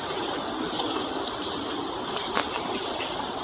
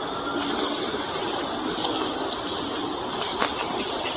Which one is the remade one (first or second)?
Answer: first